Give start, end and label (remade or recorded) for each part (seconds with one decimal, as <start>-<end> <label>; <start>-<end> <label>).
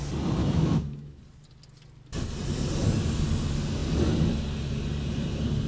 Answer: 0.0-0.4 recorded; 0.4-1.2 remade; 1.2-5.7 recorded